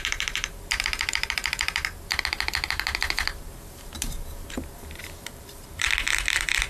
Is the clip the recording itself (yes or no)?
no